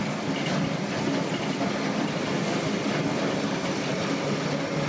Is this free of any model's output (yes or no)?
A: yes